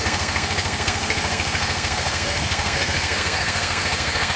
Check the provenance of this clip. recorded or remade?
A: remade